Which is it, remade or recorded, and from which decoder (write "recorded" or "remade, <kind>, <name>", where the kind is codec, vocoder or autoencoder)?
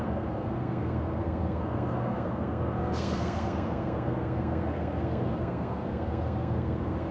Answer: remade, codec, SNAC